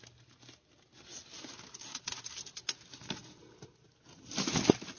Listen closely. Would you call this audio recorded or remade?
recorded